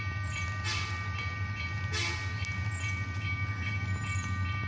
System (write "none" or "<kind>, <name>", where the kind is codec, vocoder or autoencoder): none